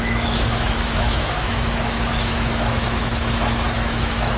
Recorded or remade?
remade